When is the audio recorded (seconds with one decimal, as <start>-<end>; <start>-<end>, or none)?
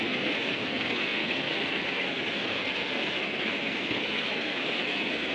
none